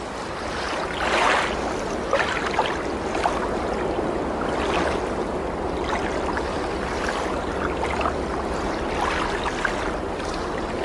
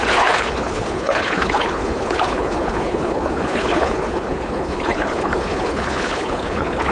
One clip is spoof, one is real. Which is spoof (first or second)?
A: second